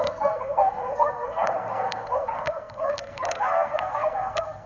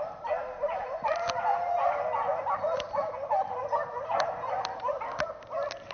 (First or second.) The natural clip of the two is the second